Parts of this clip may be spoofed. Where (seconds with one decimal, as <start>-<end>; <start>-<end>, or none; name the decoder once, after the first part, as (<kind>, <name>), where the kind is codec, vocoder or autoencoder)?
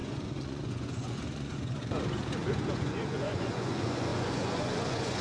0.0-5.2 (vocoder, Vocos)